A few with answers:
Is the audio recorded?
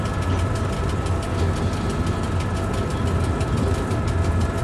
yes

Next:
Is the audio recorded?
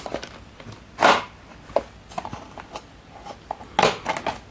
yes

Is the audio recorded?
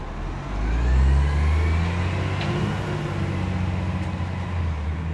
yes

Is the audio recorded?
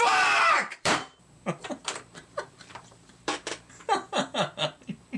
no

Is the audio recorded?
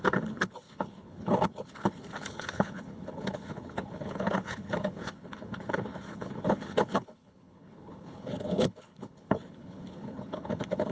no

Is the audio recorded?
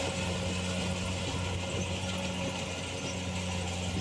yes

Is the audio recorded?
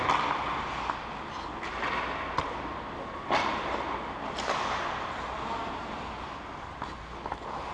yes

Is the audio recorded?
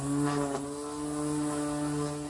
yes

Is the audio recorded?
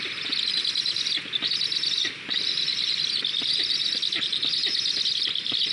yes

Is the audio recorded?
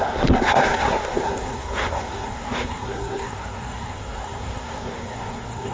no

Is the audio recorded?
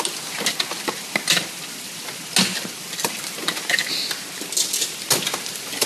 yes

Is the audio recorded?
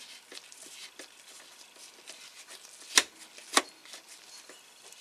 yes